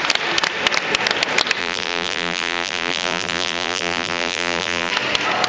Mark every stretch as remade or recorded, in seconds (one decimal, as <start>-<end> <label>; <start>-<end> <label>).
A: 0.0-1.6 recorded; 1.6-4.9 remade; 4.9-5.5 recorded